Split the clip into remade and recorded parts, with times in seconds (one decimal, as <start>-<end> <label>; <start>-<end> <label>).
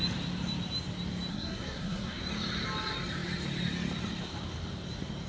0.0-1.3 recorded; 1.3-2.2 remade; 2.2-5.3 recorded